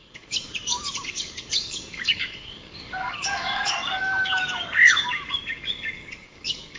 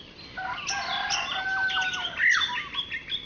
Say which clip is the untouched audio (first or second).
second